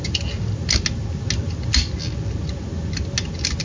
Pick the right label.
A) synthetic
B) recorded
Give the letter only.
B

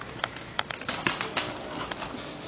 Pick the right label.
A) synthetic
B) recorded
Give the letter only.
B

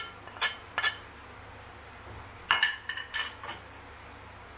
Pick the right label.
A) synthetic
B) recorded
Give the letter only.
B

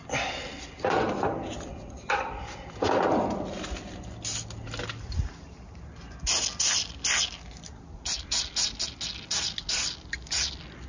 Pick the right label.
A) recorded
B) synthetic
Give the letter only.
A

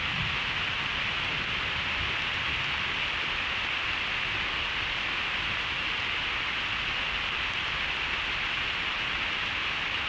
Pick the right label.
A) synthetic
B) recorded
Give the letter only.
B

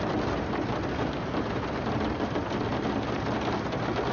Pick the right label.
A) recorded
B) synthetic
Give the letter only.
A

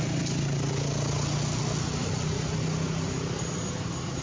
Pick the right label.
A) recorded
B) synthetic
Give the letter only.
A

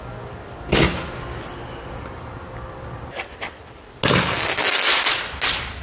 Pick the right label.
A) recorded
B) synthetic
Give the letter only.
A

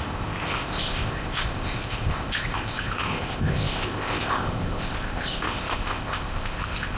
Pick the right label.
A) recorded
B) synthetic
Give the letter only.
B